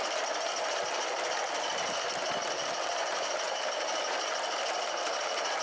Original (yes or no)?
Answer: yes